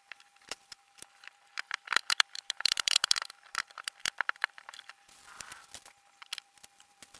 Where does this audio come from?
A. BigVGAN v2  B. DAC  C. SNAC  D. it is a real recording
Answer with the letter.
A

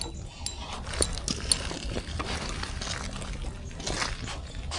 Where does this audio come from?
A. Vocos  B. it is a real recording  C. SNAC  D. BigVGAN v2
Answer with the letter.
B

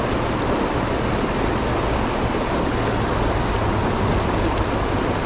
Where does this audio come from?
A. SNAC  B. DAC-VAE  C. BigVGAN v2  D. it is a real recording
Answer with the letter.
D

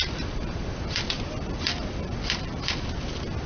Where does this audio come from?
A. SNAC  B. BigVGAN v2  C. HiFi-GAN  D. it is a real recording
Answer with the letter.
B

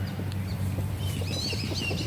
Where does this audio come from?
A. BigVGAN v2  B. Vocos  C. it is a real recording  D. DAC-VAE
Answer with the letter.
A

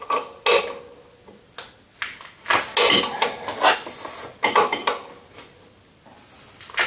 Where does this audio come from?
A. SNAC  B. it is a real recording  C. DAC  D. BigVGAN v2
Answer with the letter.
B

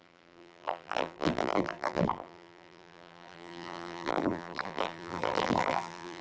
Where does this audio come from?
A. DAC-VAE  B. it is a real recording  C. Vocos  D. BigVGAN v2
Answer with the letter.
D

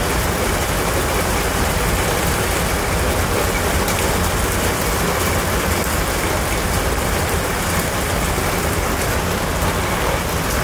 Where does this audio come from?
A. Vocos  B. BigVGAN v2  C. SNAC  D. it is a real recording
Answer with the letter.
D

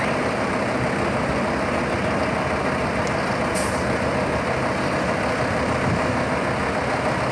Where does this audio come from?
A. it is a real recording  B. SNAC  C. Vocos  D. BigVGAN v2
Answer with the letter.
A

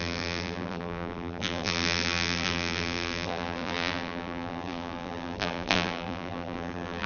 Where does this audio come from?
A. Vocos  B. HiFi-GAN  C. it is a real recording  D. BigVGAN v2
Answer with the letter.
D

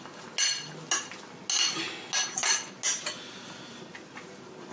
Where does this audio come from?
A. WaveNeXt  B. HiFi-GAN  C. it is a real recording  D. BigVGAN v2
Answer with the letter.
C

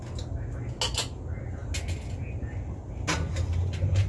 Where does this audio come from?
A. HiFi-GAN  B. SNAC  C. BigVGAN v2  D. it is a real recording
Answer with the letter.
D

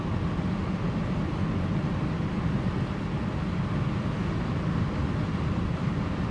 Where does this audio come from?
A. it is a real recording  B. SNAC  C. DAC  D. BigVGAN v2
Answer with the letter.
A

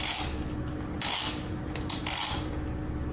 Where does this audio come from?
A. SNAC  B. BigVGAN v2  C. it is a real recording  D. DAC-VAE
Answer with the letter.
C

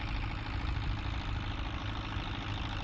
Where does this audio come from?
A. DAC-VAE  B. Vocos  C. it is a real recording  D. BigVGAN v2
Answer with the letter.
C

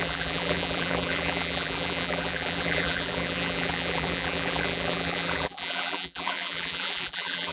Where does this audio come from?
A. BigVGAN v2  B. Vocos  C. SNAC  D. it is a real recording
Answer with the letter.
A